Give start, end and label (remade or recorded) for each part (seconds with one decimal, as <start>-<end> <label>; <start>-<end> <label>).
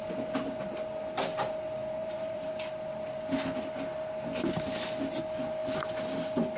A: 0.0-2.0 recorded; 2.0-2.5 remade; 2.5-6.6 recorded